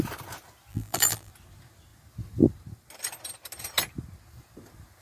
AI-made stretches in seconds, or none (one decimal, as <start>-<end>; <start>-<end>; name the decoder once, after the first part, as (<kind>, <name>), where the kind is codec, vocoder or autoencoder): 0.7-1.3 (vocoder, BigVGAN v2)